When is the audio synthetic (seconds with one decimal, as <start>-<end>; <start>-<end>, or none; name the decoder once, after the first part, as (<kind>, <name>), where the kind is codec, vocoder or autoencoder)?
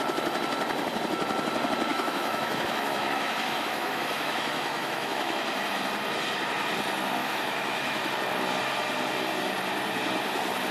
1.9-5.4 (autoencoder, DAC-VAE); 7.2-8.1